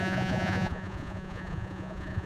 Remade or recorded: remade